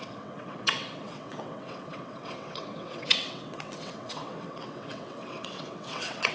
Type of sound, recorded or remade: remade